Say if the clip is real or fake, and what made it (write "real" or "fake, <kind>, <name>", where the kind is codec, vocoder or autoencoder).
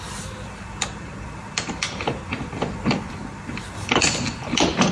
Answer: fake, vocoder, BigVGAN v2